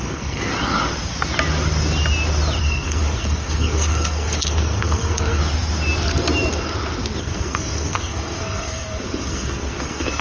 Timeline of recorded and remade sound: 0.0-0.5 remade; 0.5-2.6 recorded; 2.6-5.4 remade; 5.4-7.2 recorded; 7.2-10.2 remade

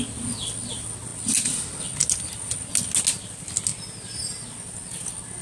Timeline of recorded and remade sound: 0.0-5.4 recorded

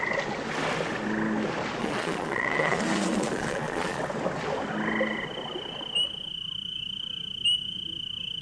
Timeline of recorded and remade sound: 0.0-1.8 recorded; 1.8-4.0 remade; 4.0-8.4 recorded

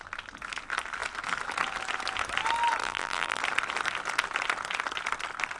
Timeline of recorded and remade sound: 0.0-2.8 recorded; 2.8-3.4 remade; 3.4-5.6 recorded

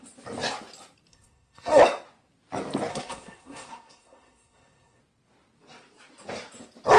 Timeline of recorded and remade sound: 0.0-1.1 recorded; 1.1-1.8 remade; 1.8-2.9 recorded; 2.9-5.0 remade; 5.0-7.0 recorded

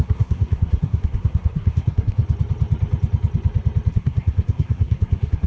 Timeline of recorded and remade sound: 0.0-2.2 remade; 2.2-3.9 recorded; 3.9-5.5 remade

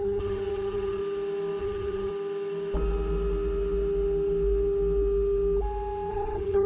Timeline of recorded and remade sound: 0.0-1.0 remade; 1.0-1.6 recorded; 1.6-2.1 remade; 2.1-6.1 recorded; 6.1-6.7 remade

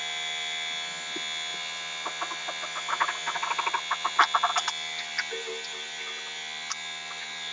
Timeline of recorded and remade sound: 0.0-7.5 recorded